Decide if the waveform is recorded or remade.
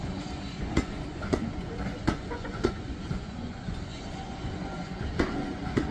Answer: remade